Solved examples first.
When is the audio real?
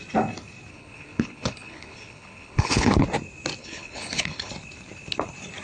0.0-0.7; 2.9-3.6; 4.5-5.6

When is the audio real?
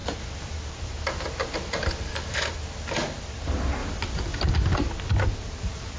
0.7-1.6; 2.6-3.8; 4.5-6.0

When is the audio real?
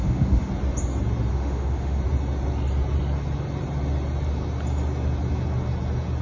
0.5-1.3; 2.0-6.2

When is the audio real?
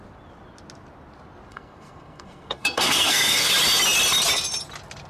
0.0-1.5; 3.5-5.1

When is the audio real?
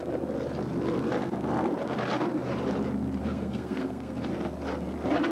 0.0-3.2; 4.3-5.3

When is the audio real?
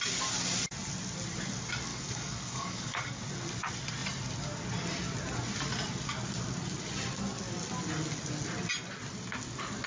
0.0-1.9; 3.2-9.9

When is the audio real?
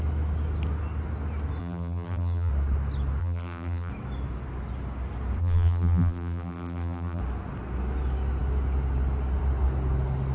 0.0-1.6; 2.5-3.2; 3.9-5.4; 7.2-10.3